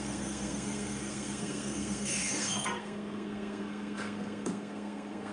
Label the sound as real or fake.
fake